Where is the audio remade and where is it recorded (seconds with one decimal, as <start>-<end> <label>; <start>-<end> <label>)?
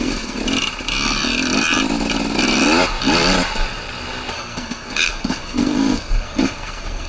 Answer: 0.0-0.4 remade; 0.4-4.3 recorded; 4.3-7.1 remade